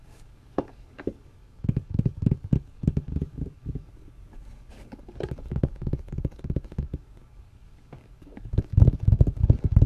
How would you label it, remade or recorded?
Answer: remade